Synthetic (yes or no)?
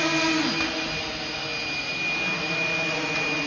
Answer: no